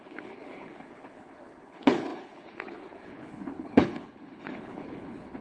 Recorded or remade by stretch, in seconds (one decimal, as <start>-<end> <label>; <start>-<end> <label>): 0.0-5.4 remade